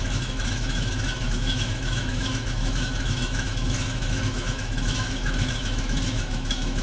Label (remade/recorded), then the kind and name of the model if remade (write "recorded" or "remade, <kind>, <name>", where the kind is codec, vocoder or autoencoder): remade, autoencoder, DAC-VAE